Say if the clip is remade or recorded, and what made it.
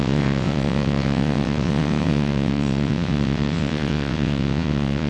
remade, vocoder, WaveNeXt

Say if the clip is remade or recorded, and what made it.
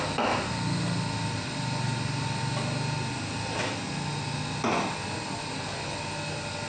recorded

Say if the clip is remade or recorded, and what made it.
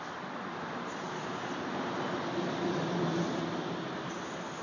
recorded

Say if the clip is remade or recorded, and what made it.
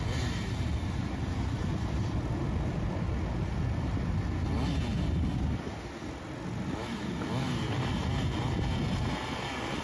recorded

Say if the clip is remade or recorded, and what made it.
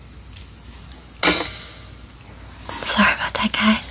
recorded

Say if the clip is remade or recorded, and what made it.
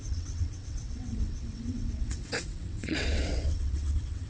remade, vocoder, WaveNeXt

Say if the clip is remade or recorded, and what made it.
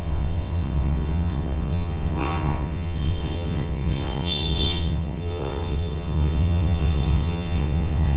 remade, vocoder, WaveNeXt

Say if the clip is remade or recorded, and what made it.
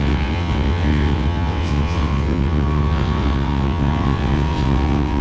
remade, vocoder, WaveNeXt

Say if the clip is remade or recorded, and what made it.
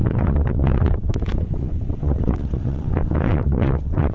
remade, vocoder, WaveNeXt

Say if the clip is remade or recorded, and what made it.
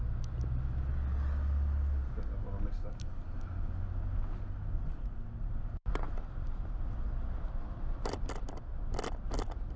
recorded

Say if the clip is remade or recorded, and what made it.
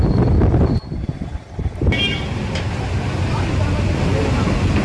recorded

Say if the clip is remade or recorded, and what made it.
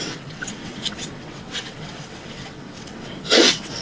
remade, vocoder, WaveNeXt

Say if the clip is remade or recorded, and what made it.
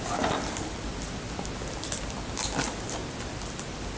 recorded